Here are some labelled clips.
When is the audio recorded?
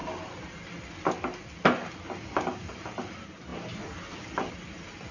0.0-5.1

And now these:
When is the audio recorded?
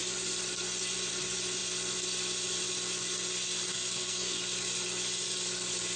0.0-3.7; 4.4-6.0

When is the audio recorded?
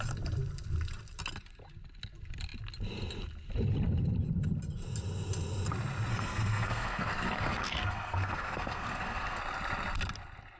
0.0-6.1; 9.4-10.6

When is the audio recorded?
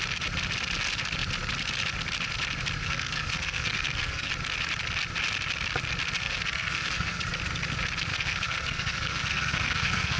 0.0-2.8; 4.3-6.2; 7.2-8.1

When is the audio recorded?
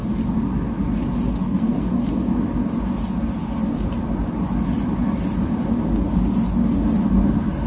0.0-1.3; 2.0-7.7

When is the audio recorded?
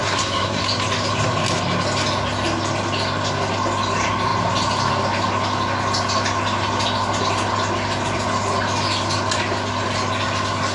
0.6-10.7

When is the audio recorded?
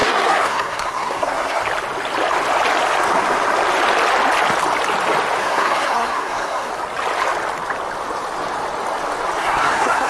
1.6-5.4; 6.7-9.4